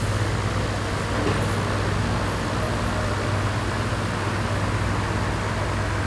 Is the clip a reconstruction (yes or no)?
no